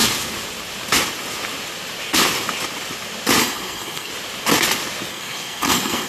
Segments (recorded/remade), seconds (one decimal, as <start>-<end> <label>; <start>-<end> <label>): 0.0-3.4 recorded; 3.4-4.1 remade; 4.1-5.1 recorded; 5.1-6.1 remade